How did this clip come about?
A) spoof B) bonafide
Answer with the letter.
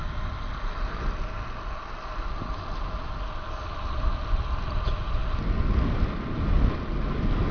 B